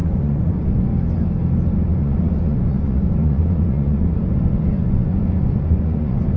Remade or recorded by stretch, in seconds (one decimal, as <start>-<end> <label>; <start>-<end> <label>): 0.0-0.9 remade; 0.9-1.9 recorded; 1.9-6.4 remade